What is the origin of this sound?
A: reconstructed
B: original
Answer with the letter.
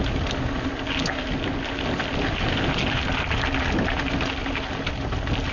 B